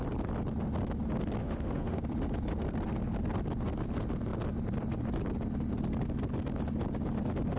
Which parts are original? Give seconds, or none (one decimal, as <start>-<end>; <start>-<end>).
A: 0.0-1.4; 2.0-7.6